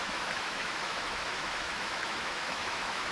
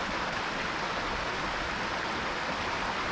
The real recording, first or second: second